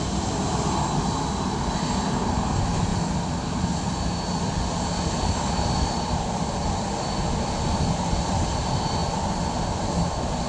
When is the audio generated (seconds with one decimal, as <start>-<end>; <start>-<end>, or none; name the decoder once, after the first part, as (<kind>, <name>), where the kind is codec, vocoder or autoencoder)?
none